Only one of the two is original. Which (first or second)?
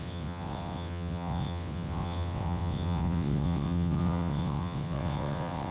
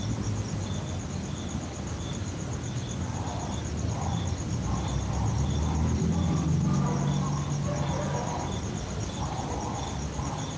second